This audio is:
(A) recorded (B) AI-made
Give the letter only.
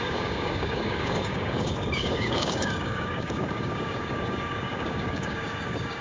B